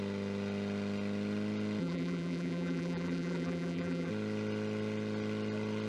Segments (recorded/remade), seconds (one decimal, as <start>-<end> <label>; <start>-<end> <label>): 0.0-1.8 recorded; 1.8-4.1 remade; 4.1-5.9 recorded